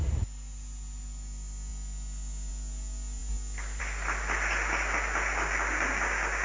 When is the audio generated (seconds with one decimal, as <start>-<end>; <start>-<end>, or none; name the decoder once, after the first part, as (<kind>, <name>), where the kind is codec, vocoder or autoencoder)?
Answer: none